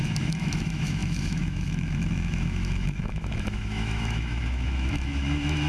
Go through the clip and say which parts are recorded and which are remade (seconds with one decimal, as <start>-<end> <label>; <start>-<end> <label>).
0.0-5.7 remade